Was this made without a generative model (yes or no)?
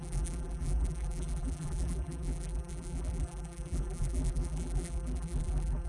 no